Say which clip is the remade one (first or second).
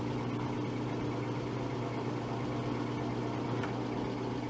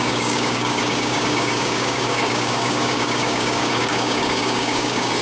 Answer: second